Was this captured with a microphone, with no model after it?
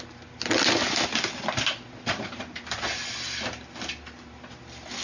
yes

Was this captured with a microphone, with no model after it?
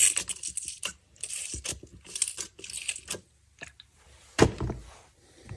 yes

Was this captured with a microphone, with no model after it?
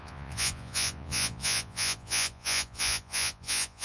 no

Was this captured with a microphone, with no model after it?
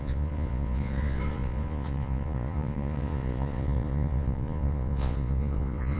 no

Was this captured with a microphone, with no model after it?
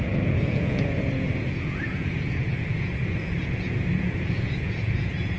no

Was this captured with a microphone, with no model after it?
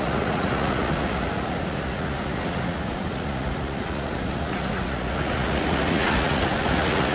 no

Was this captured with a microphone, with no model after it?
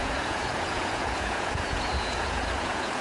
no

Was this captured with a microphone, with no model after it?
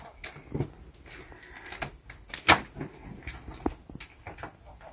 yes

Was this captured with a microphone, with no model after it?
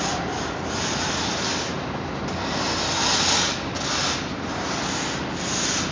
yes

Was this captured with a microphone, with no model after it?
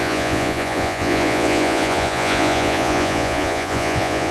no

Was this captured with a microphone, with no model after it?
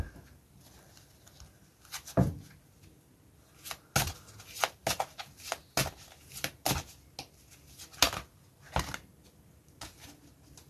yes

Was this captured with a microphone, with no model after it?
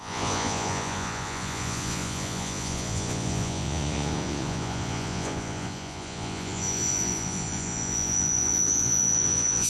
no